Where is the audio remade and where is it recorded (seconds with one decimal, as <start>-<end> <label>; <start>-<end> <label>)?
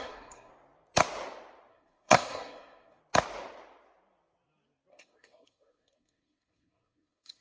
0.0-0.5 remade; 0.5-1.7 recorded; 1.7-3.0 remade; 3.0-4.9 recorded; 4.9-7.4 remade